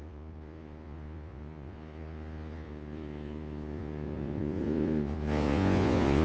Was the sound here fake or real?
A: fake